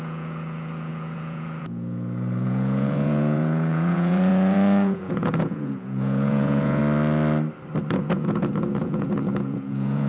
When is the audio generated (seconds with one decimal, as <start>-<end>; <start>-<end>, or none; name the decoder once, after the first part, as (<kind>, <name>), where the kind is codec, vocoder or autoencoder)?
0.0-6.8 (vocoder, Vocos); 7.9-10.1